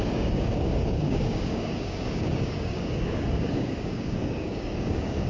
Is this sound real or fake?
fake